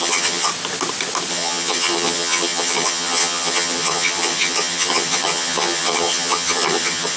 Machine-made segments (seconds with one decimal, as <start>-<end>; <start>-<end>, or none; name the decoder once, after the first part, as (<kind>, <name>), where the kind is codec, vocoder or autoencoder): 0.0-0.5 (vocoder, HiFi-GAN); 1.3-7.2